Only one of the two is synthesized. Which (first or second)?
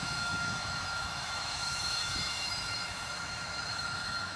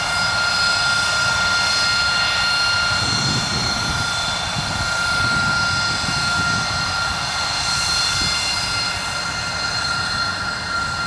first